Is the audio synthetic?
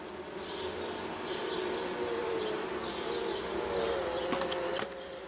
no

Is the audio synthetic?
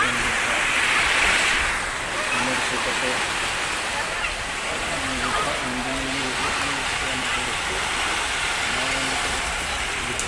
no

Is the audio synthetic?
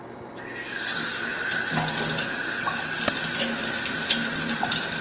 no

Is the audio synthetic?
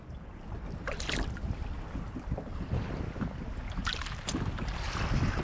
no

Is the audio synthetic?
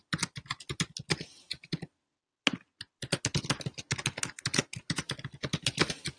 no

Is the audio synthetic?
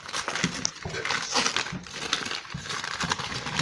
no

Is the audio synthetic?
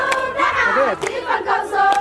no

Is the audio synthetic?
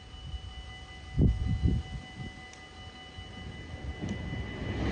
no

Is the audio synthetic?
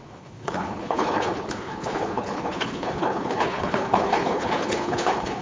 yes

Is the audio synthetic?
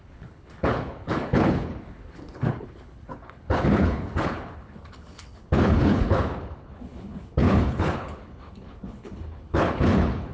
yes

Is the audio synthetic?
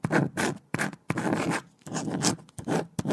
no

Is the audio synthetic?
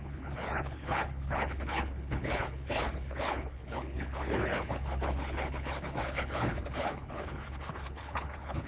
yes